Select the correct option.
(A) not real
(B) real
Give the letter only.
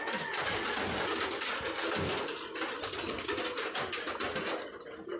B